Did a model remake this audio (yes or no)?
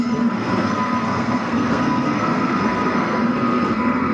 yes